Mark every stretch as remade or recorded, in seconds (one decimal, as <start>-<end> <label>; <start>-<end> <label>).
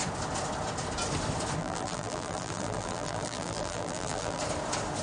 0.0-1.6 recorded; 1.6-4.4 remade; 4.4-5.0 recorded